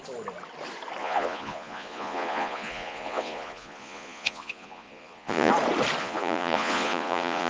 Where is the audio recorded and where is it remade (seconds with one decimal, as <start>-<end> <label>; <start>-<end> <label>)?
0.0-1.0 recorded; 1.0-5.5 remade; 5.5-6.0 recorded; 6.0-7.5 remade